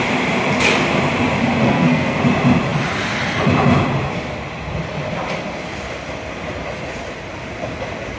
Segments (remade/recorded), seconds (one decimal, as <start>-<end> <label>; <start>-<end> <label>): 0.0-1.6 recorded; 1.6-2.2 remade; 2.2-8.2 recorded